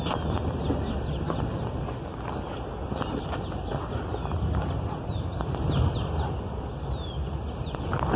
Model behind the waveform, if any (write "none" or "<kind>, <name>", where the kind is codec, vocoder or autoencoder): none